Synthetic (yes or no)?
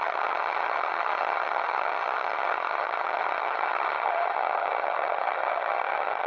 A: yes